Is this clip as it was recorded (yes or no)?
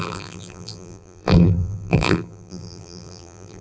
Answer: no